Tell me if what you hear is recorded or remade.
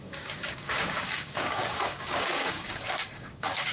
remade